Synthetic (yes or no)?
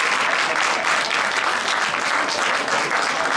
no